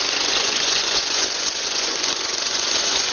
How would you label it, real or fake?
fake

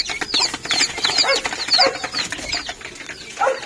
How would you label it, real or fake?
real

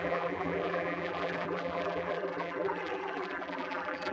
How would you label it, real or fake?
fake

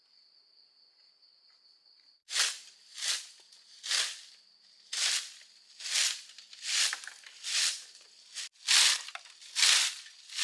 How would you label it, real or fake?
real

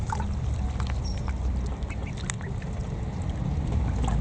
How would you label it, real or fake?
real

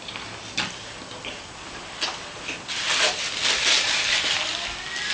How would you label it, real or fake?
real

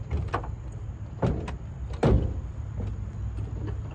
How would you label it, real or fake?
real